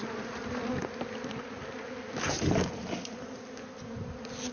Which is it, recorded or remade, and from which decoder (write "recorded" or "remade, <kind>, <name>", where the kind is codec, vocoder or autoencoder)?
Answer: recorded